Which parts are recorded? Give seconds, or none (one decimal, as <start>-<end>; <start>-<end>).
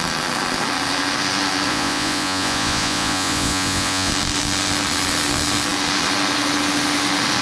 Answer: 0.0-1.7; 4.1-7.4